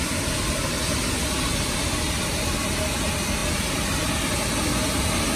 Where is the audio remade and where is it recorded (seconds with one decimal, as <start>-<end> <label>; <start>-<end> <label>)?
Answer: 0.0-5.4 recorded